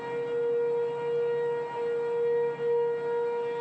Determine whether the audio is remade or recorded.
recorded